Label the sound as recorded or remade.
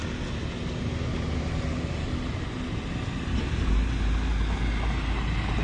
recorded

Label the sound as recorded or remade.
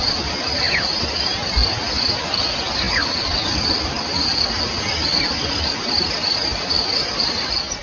recorded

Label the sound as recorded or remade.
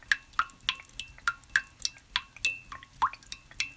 recorded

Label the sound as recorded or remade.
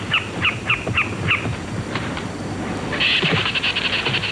recorded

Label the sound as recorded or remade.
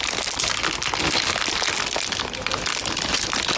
recorded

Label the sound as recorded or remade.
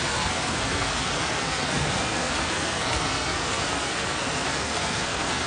remade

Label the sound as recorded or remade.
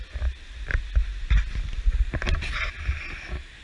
recorded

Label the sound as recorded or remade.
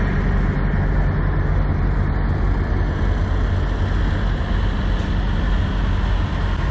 recorded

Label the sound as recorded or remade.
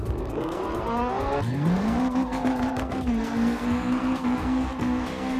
remade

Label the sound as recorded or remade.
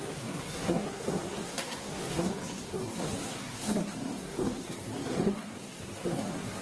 remade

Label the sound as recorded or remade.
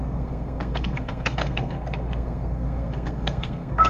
remade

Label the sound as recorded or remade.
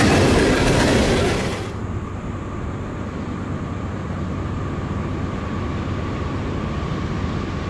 recorded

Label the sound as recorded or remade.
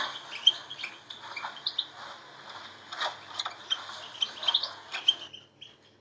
recorded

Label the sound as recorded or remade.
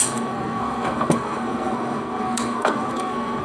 remade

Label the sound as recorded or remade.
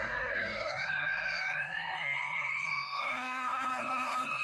remade